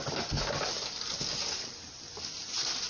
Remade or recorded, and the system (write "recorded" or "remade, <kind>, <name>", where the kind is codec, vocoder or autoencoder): recorded